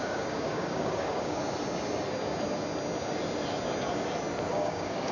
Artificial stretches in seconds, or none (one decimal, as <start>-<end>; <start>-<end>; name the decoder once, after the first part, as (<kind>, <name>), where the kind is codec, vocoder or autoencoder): 0.0-1.4 (codec, DAC); 4.5-5.1